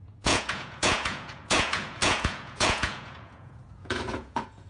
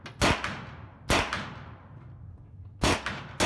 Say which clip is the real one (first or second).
second